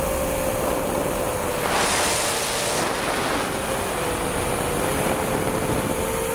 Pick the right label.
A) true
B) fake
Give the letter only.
A